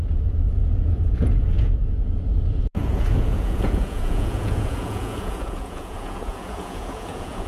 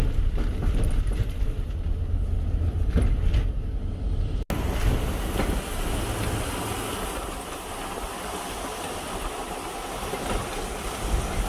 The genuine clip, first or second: second